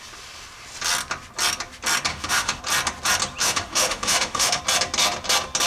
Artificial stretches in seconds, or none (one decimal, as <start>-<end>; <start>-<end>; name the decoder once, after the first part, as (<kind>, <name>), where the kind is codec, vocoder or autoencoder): 2.1-2.6 (autoencoder, DAC-VAE); 3.4-4.6